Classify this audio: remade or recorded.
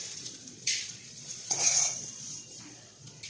remade